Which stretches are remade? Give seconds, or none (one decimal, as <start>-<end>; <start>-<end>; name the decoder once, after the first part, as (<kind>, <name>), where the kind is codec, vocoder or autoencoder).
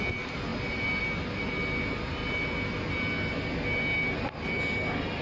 none